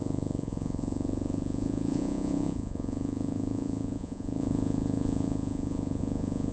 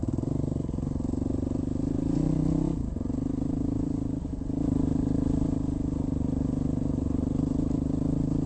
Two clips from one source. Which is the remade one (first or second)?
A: first